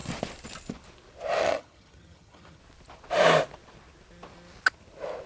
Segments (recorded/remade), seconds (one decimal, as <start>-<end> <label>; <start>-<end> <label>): 0.0-1.4 recorded; 1.4-2.6 remade; 2.6-5.3 recorded

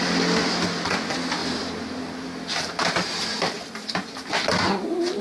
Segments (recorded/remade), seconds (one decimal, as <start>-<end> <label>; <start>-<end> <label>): 0.0-1.4 recorded; 1.4-4.5 remade; 4.5-5.2 recorded